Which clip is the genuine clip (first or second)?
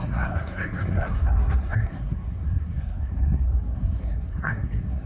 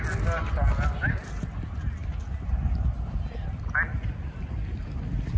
second